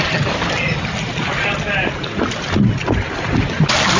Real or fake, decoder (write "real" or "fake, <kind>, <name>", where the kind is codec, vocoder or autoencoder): real